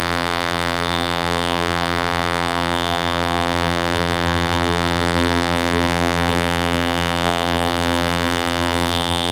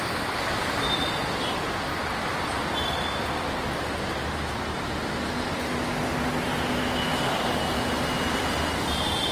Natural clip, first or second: second